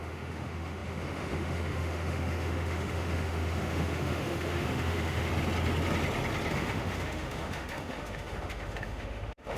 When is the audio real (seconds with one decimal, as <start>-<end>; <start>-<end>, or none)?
5.3-6.5